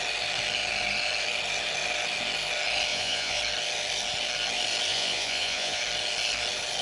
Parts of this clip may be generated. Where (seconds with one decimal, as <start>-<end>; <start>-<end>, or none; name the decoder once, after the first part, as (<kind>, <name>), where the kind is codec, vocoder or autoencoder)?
2.9-3.4 (vocoder, Vocos); 4.9-5.8